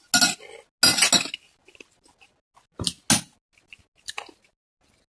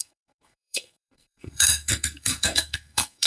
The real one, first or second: first